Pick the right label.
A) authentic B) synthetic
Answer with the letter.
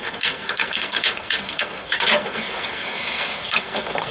B